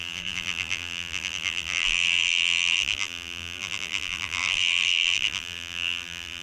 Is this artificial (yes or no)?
yes